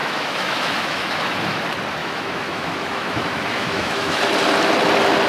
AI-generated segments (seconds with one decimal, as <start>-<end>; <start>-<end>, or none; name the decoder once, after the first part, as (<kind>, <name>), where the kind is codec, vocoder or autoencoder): 0.0-1.6 (autoencoder, DAC-VAE); 2.0-4.2

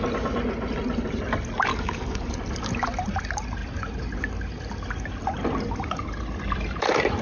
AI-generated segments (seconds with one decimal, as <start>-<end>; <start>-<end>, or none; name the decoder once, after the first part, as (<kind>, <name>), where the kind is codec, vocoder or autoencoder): 1.7-2.3 (codec, DAC)

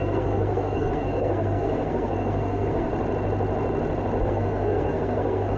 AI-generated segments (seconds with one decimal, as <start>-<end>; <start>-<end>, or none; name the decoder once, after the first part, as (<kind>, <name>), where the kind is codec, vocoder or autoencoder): 0.0-2.9 (codec, SNAC); 4.2-5.6

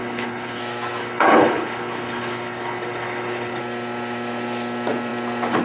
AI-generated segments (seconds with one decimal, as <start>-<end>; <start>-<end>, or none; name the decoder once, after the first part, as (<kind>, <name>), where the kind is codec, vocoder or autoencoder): 0.0-0.6 (codec, HILCodec); 1.0-3.6

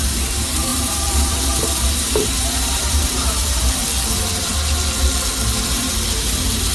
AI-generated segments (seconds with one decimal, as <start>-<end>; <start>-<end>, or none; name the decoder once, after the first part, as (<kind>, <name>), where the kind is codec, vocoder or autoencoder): 0.0-3.8 (vocoder, BigVGAN v2); 5.7-6.7

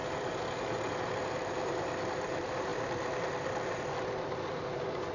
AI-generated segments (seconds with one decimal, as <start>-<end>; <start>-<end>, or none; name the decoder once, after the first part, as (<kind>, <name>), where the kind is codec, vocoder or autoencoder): 1.3-5.1 (vocoder, BigVGAN v2)

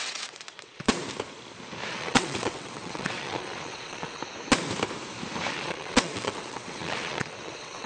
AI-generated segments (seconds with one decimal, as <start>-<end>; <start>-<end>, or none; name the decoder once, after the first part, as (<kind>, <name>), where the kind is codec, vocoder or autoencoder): 0.0-1.0 (vocoder, WaveNeXt); 1.9-4.2; 5.5-7.9